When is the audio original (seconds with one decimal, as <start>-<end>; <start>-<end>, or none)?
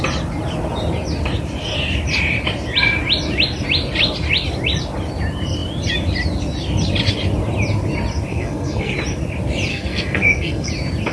0.0-8.3; 8.9-9.7; 10.7-11.1